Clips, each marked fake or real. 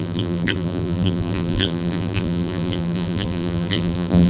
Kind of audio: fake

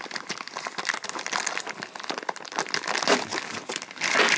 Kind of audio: real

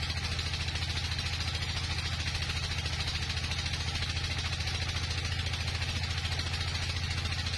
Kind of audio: real